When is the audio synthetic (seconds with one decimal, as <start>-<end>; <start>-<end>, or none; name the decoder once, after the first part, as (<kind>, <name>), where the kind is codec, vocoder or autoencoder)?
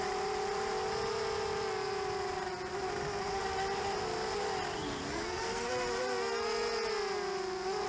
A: 5.1-5.7 (codec, SNAC)